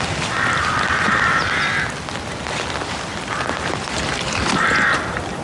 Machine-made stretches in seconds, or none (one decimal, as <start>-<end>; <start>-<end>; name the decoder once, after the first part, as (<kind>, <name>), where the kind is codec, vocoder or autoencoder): none